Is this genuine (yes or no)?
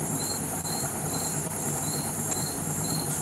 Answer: no